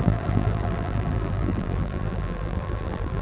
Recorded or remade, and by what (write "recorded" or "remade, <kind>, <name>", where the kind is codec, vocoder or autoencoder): remade, vocoder, BigVGAN v2